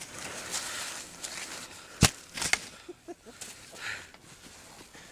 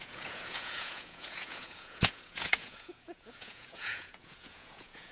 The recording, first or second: first